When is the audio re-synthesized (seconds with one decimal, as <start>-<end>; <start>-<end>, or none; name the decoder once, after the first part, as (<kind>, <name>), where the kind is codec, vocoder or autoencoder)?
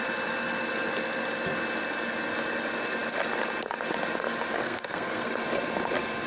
4.6-5.3 (codec, SNAC)